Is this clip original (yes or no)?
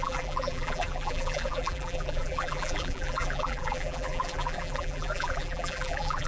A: no